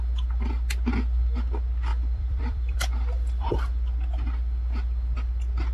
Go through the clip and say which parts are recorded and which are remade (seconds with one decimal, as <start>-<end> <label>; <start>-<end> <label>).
0.0-1.9 recorded; 1.9-3.5 remade; 3.5-5.7 recorded